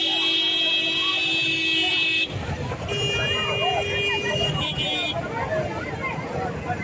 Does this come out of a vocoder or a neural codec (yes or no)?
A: no